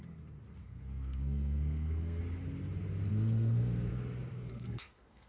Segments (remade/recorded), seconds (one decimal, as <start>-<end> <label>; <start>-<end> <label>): 0.0-0.6 recorded; 0.6-2.2 remade; 2.2-3.1 recorded; 3.1-3.9 remade; 3.9-4.3 recorded; 4.3-5.3 remade